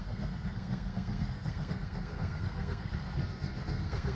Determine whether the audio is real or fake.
fake